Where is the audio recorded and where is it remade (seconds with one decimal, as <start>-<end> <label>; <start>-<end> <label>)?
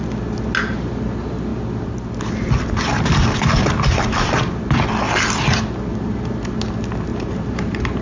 0.0-7.1 recorded; 7.1-8.0 remade